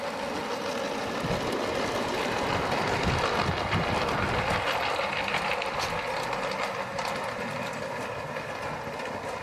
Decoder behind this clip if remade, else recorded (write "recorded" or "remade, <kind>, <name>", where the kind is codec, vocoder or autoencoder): recorded